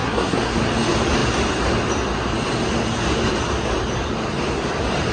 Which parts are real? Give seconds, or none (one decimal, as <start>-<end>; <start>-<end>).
0.5-5.1